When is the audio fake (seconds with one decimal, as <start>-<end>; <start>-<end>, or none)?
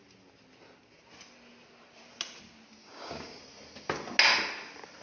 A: 2.8-3.4